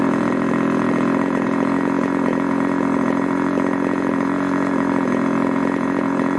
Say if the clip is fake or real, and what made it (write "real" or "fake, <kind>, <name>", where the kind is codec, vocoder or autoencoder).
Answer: fake, vocoder, Vocos